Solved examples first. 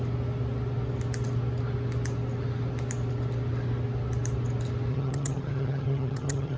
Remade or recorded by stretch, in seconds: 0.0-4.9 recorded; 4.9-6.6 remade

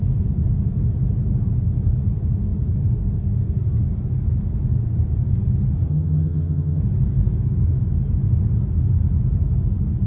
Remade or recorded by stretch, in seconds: 0.0-5.9 recorded; 5.9-6.8 remade; 6.8-10.1 recorded

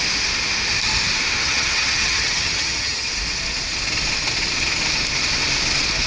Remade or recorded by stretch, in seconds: 0.0-1.4 recorded; 1.4-3.1 remade; 3.1-6.1 recorded

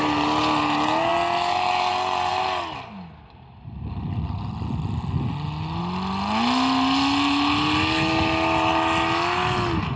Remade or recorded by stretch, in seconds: 0.0-10.0 recorded

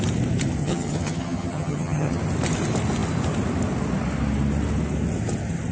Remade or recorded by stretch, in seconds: 0.0-0.6 recorded; 0.6-2.2 remade; 2.2-5.7 recorded

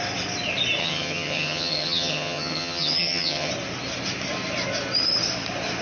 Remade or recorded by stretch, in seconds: 0.0-0.8 recorded; 0.8-3.5 remade; 3.5-5.8 recorded